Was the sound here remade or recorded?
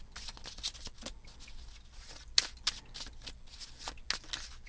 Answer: recorded